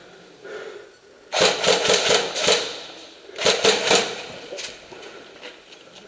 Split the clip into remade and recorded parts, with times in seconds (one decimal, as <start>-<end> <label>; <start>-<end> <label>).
0.0-6.1 recorded